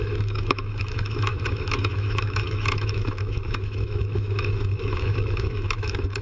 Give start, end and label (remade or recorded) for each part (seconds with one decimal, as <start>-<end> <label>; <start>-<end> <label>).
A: 0.0-6.2 remade